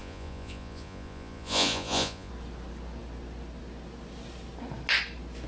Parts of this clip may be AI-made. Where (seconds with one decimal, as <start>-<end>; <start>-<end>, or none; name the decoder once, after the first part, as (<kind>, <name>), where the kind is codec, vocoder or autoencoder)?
0.0-2.3 (vocoder, Vocos)